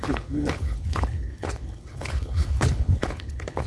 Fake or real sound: fake